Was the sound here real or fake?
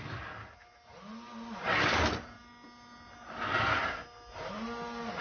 real